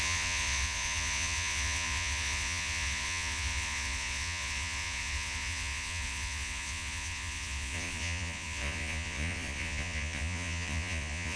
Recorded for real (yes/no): no